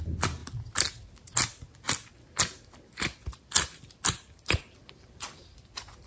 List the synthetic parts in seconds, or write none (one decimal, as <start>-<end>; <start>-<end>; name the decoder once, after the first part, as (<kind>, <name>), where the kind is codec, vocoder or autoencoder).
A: 4.8-5.5 (vocoder, BigVGAN v2)